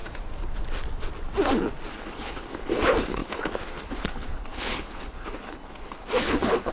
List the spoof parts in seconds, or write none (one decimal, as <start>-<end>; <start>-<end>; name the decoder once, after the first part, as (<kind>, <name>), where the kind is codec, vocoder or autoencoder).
1.9-6.7 (codec, HILCodec)